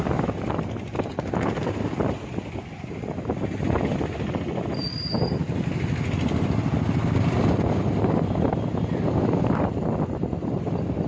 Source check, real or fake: real